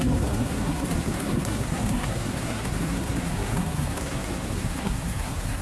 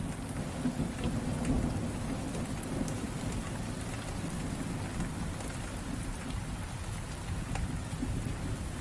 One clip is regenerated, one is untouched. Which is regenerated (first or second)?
first